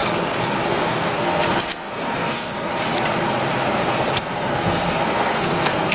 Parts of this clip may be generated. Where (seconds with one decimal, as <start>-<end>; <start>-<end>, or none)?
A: 0.7-2.7; 3.8-5.9